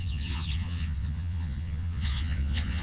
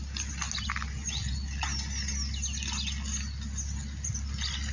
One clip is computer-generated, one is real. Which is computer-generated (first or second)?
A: first